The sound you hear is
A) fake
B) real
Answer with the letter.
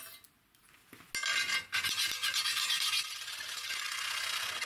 B